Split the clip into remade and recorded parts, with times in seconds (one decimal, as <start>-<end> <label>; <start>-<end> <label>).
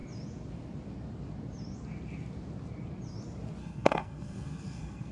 0.0-3.6 recorded; 3.6-5.1 remade